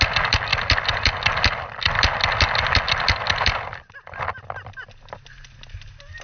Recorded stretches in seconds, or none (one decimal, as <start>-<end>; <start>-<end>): 0.0-6.2